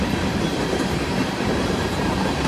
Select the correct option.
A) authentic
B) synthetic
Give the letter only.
A